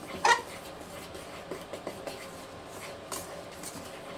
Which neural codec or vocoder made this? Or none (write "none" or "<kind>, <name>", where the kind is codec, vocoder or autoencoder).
none